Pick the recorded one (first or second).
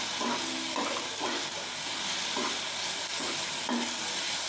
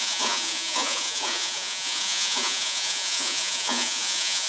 first